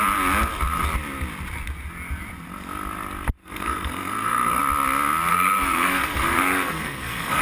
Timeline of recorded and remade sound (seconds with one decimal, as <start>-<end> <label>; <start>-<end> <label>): 0.0-3.4 recorded; 3.4-4.6 remade; 4.6-5.3 recorded; 5.3-7.4 remade